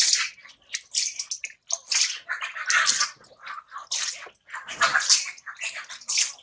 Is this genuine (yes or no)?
yes